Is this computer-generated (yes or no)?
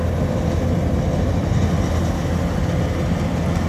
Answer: no